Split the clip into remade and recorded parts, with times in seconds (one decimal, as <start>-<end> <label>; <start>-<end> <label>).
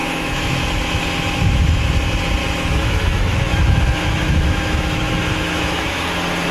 0.0-1.9 remade; 1.9-2.4 recorded; 2.4-6.0 remade; 6.0-6.5 recorded